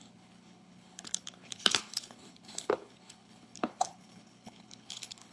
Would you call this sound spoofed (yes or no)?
yes